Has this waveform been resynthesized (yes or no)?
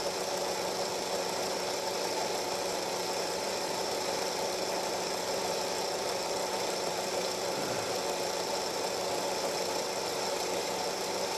yes